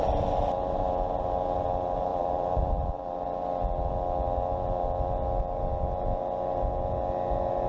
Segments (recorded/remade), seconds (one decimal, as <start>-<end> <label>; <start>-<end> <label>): 0.0-2.1 recorded; 2.1-2.9 remade; 2.9-7.7 recorded

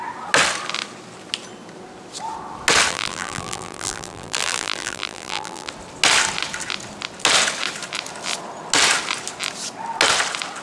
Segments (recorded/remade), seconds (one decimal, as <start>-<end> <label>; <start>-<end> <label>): 0.0-2.9 recorded; 2.9-5.7 remade; 5.7-10.6 recorded